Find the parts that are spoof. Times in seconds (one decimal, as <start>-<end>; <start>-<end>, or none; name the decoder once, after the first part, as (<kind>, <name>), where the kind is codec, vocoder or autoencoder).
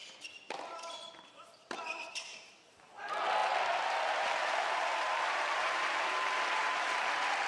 1.8-2.5 (vocoder, BigVGAN v2); 4.9-7.0